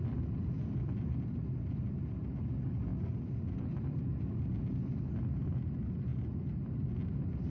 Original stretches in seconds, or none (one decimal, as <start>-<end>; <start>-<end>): 0.0-7.5

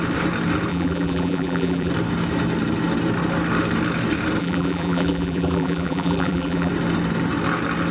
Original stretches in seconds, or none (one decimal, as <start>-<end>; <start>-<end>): 0.0-0.7; 1.9-4.4; 6.7-7.9

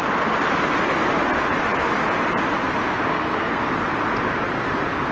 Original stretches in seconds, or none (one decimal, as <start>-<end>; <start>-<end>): 0.0-3.1; 3.6-5.1

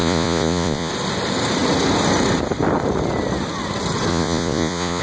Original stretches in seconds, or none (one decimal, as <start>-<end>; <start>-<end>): 0.9-4.1

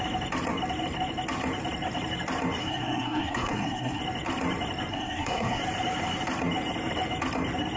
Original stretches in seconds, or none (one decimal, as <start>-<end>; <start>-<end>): 0.0-2.6; 4.0-4.9; 5.6-7.8

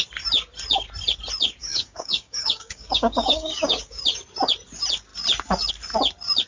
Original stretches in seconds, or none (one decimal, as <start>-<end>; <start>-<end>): 0.0-1.6; 4.0-6.5

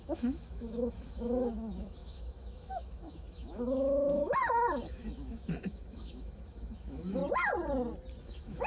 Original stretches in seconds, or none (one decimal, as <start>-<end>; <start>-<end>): 7.2-8.2

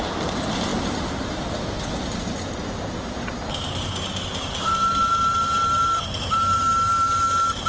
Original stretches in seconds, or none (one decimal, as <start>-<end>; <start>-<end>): 0.0-7.7